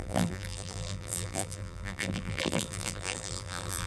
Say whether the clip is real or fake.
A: fake